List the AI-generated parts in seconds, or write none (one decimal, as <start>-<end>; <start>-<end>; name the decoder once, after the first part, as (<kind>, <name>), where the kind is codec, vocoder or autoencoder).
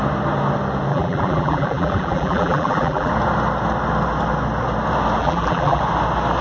0.9-3.1 (vocoder, BigVGAN v2); 5.2-5.8